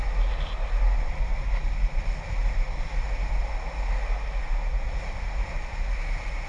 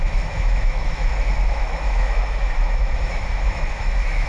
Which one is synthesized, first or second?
second